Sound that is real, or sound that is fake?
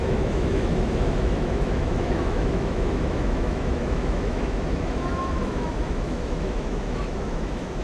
fake